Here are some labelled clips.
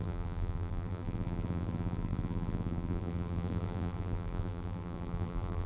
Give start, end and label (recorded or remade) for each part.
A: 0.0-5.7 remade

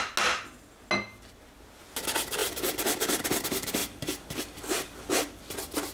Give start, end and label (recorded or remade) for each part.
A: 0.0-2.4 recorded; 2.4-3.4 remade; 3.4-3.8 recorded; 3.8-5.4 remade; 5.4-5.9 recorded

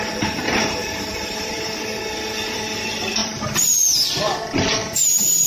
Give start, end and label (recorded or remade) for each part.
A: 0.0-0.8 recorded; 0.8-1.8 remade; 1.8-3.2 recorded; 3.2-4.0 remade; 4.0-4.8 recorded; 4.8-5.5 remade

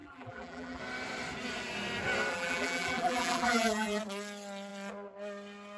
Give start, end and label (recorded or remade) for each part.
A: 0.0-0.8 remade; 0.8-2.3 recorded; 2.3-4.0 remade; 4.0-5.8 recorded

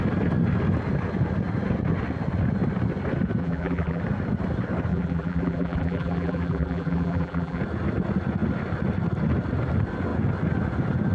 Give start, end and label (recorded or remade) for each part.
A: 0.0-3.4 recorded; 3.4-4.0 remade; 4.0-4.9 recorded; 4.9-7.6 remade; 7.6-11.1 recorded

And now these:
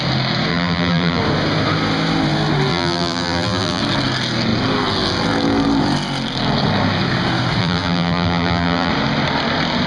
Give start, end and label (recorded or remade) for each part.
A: 0.0-0.5 recorded; 0.5-1.2 remade; 1.2-2.7 recorded; 2.7-3.8 remade; 3.8-7.6 recorded; 7.6-8.9 remade; 8.9-9.9 recorded